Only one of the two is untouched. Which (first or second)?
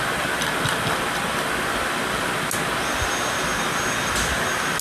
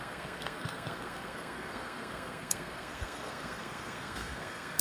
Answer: first